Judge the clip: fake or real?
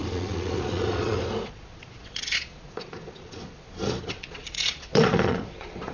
fake